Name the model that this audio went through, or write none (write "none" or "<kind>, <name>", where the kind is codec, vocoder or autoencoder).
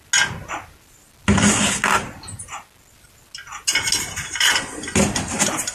none